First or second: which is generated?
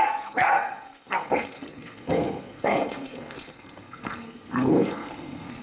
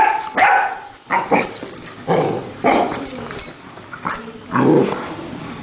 first